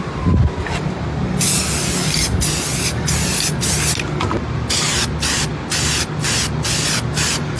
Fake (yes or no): no